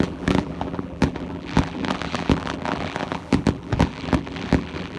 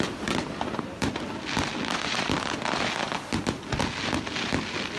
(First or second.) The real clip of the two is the second